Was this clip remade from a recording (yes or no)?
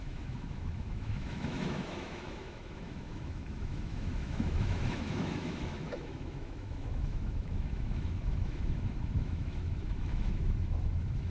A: yes